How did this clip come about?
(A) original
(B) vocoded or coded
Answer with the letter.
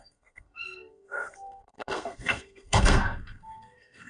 B